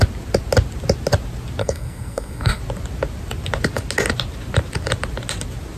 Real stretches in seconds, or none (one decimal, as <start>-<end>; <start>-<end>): 0.0-1.6; 2.6-5.8